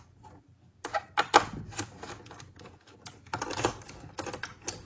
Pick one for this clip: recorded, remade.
recorded